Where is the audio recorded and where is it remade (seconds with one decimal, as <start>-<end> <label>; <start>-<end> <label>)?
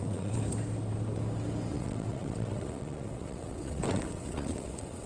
0.0-0.4 remade; 0.4-1.7 recorded; 1.7-5.1 remade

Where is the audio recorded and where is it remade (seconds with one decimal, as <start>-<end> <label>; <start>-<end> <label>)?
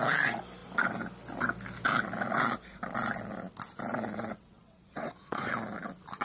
0.0-4.3 recorded; 4.3-5.5 remade; 5.5-6.2 recorded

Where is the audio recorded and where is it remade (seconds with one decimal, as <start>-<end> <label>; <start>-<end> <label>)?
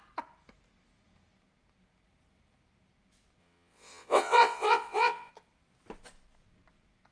0.0-3.4 recorded; 3.4-5.3 remade; 5.3-7.1 recorded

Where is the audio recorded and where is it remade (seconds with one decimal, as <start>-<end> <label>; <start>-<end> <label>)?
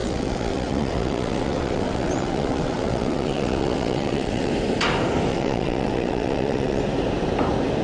0.0-4.5 remade; 4.5-5.3 recorded; 5.3-6.8 remade; 6.8-7.8 recorded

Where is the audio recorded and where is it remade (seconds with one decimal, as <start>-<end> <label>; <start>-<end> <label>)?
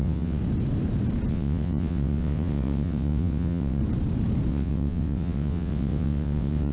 0.0-0.4 remade; 0.4-1.3 recorded; 1.3-3.8 remade; 3.8-4.5 recorded; 4.5-6.7 remade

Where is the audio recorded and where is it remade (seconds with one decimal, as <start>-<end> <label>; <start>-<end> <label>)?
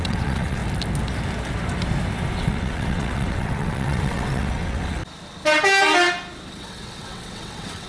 0.0-0.6 remade; 0.6-2.4 recorded; 2.4-5.0 remade; 5.0-6.5 recorded; 6.5-7.9 remade